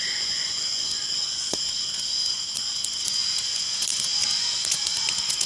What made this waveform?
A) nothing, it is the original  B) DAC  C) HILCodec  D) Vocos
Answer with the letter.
D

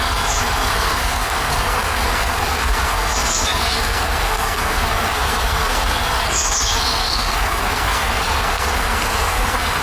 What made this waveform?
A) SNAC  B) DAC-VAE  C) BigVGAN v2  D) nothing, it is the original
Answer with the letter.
A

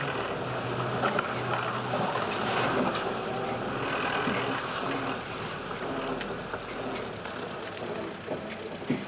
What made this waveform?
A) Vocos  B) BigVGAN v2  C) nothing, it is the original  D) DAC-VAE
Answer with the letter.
C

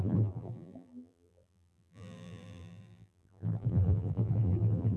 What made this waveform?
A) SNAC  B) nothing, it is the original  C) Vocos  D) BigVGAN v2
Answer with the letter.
D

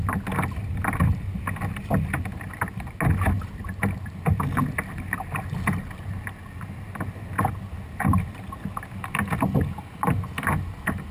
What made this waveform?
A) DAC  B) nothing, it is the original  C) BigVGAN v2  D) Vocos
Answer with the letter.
B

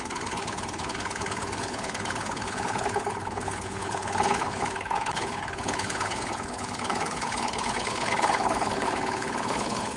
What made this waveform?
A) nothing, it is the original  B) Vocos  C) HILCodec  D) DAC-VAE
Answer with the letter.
C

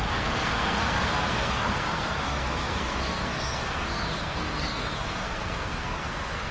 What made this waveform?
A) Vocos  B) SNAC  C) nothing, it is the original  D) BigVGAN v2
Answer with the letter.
B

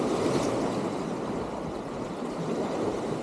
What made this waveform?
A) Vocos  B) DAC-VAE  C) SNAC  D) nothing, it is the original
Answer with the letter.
D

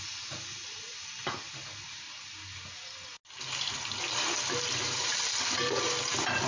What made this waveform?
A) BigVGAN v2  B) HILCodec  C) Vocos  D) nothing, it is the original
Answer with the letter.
D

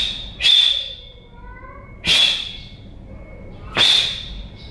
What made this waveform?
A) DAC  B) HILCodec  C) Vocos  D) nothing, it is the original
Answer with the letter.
D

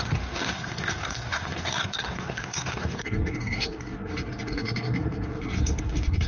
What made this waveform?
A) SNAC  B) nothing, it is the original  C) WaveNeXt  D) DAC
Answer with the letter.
A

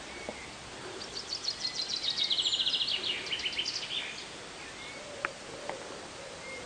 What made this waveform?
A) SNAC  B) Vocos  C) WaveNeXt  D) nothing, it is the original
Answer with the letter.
D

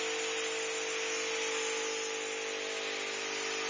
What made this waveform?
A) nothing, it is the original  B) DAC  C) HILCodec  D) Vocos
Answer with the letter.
A